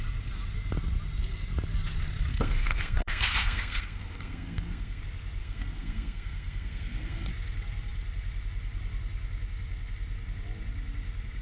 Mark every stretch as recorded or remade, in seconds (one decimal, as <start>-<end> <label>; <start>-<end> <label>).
0.0-2.3 recorded; 2.3-5.0 remade; 5.0-5.4 recorded; 5.4-7.3 remade; 7.3-11.4 recorded

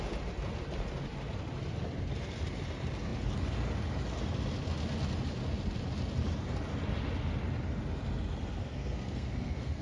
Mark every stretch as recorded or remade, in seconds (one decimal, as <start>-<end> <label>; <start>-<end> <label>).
0.0-8.6 recorded; 8.6-9.8 remade